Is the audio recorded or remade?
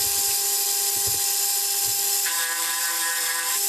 recorded